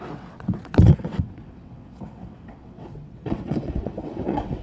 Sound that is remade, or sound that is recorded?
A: remade